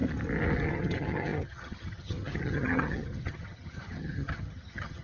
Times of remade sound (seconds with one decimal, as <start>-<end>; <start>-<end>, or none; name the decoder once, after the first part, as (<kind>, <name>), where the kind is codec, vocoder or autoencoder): 0.7-5.0 (vocoder, HiFi-GAN)